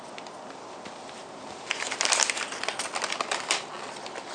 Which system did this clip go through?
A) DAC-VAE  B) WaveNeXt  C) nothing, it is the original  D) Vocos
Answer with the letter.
C